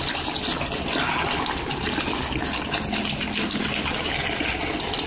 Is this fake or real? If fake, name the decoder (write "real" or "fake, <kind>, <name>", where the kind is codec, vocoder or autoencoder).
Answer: real